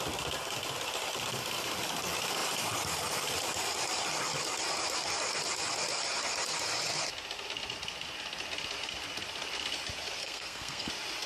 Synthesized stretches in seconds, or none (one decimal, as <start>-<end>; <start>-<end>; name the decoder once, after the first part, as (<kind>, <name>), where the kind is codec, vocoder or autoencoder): 10.2-10.9 (codec, SNAC)